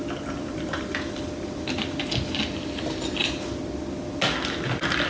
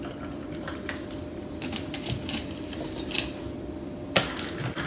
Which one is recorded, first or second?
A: first